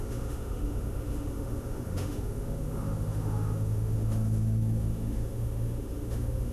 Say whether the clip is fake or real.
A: fake